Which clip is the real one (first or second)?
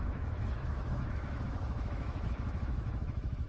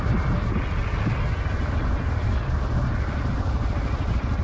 second